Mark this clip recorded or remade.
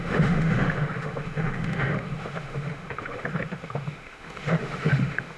remade